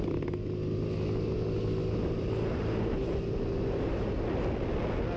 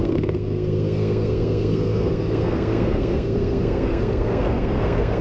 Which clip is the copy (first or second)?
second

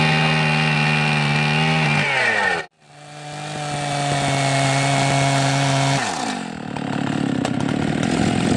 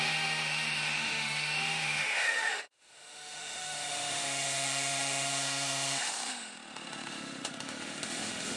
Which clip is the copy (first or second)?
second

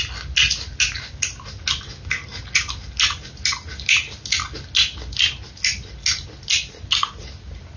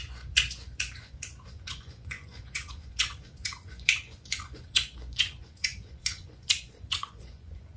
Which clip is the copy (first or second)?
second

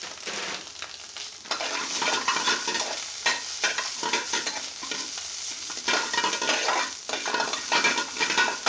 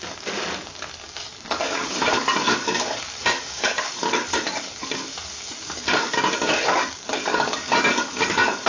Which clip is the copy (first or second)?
second